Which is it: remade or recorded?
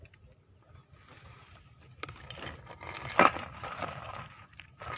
recorded